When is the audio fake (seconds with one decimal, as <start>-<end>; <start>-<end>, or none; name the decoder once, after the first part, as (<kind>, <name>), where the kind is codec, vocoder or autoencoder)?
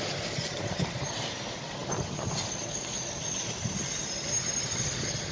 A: none